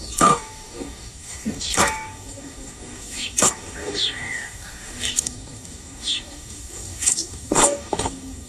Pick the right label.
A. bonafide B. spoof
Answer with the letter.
B